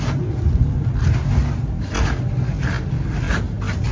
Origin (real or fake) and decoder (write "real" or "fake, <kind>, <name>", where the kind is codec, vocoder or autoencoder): real